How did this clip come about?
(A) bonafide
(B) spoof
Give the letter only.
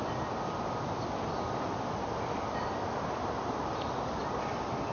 A